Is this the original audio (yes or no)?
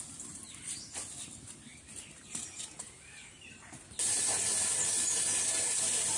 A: yes